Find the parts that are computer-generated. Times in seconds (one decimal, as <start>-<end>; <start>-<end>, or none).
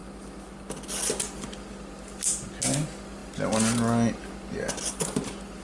none